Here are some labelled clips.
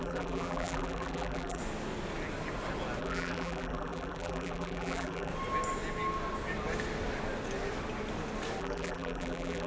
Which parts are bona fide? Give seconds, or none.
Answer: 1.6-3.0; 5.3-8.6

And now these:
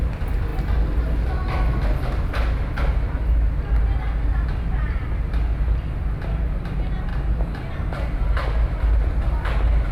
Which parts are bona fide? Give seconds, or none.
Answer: 0.0-9.9

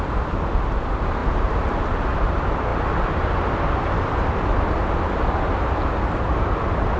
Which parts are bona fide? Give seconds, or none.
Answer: 0.0-7.0

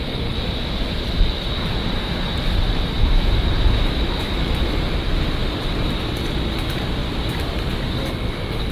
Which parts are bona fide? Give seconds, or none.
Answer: 0.0-1.8; 3.9-5.4; 6.0-7.0; 8.1-8.7

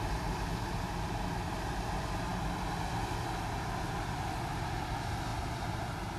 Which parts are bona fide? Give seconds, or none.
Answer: 0.0-6.2

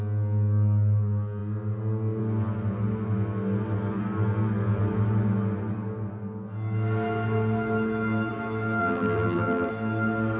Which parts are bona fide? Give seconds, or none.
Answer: 0.0-8.8; 9.7-10.4